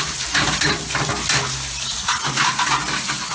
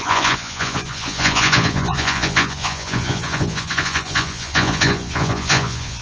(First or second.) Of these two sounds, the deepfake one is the second